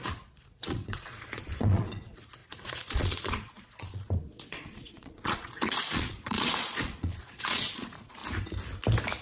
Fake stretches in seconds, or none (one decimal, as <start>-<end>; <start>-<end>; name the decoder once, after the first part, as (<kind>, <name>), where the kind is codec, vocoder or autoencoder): 0.0-8.2 (vocoder, Vocos)